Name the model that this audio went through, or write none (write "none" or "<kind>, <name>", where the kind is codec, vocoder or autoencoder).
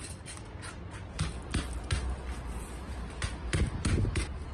none